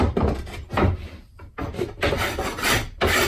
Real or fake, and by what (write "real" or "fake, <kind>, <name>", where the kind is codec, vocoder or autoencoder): fake, vocoder, BigVGAN v2